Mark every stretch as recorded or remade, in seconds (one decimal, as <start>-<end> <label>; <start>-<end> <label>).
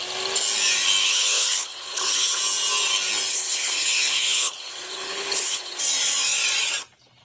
0.0-1.0 recorded; 1.0-2.4 remade; 2.4-3.3 recorded; 3.3-5.8 remade; 5.8-7.2 recorded